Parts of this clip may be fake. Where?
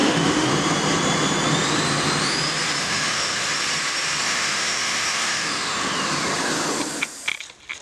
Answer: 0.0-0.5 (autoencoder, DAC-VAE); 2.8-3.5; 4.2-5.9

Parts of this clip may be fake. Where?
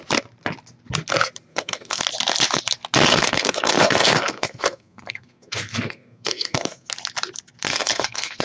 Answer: 1.5-2.0 (codec, SNAC); 3.1-6.9; 7.7-8.4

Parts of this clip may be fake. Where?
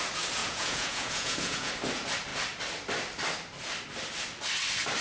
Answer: 0.4-1.7 (vocoder, Vocos)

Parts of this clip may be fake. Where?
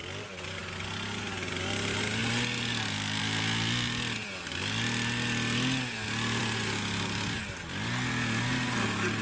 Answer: none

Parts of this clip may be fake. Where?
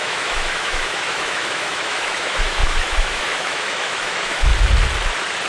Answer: 0.0-4.5 (autoencoder, DAC-VAE)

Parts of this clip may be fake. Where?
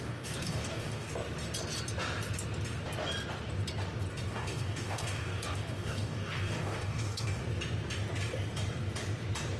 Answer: 0.0-1.1 (codec, DAC); 4.3-7.4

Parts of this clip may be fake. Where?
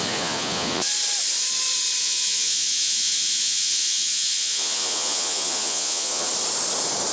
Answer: 0.0-0.9 (vocoder, Vocos); 2.0-6.3